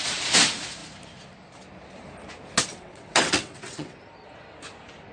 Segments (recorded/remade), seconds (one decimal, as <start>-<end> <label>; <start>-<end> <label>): 0.0-2.7 recorded; 2.7-4.0 remade; 4.0-5.1 recorded